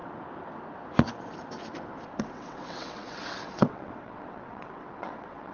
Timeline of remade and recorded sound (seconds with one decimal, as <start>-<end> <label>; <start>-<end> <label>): 0.0-2.1 recorded; 2.1-5.5 remade